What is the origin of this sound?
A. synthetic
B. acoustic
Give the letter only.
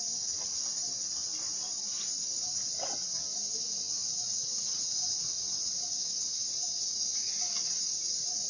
B